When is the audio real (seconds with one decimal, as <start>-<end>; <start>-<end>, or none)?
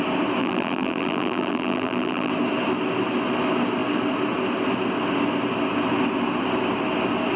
0.0-0.4; 2.3-7.4